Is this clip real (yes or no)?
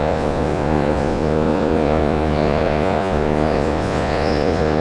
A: no